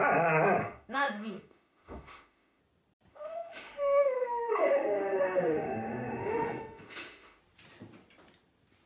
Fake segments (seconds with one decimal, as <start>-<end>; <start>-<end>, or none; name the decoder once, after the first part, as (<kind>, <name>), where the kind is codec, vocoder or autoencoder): 0.6-2.6 (autoencoder, DAC-VAE); 3.1-7.4